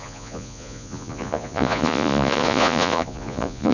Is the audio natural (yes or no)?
no